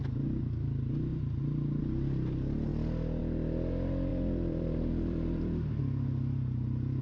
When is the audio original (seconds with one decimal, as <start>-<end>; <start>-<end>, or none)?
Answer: 0.0-2.7; 3.2-4.1; 5.8-7.0